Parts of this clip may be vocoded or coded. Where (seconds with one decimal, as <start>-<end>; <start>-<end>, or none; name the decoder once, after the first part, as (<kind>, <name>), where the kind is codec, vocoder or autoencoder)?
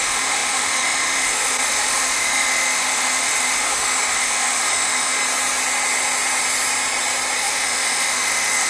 0.0-5.2 (autoencoder, DAC-VAE); 7.4-8.7